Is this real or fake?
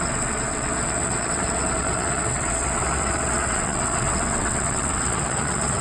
fake